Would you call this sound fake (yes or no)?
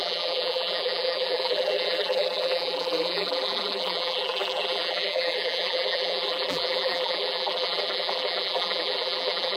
yes